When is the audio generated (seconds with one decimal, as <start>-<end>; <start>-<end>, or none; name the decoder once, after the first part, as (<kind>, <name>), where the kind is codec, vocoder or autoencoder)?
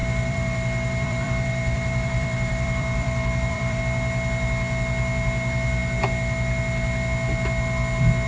0.0-3.8 (vocoder, BigVGAN v2)